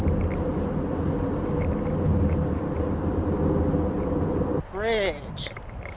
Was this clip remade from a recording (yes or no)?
no